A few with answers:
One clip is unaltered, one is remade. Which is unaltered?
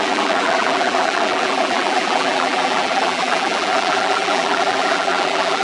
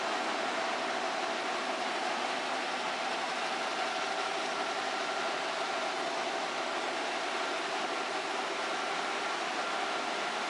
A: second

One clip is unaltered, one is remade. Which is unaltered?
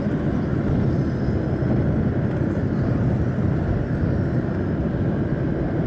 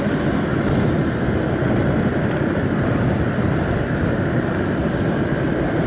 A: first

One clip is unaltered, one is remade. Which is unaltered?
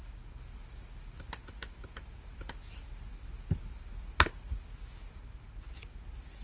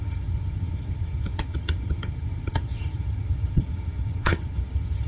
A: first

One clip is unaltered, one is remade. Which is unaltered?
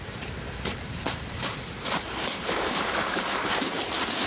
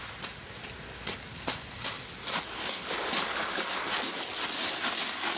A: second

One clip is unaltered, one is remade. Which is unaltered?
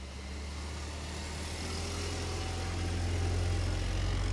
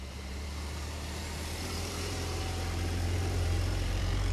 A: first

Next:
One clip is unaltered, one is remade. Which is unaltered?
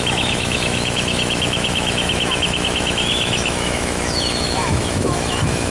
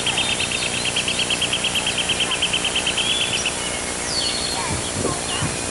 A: second